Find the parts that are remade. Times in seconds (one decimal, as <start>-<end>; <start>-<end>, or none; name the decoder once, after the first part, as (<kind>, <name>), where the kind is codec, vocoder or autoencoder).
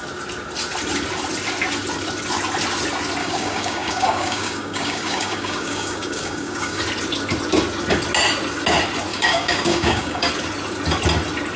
3.2-6.8 (codec, DAC); 9.1-10.3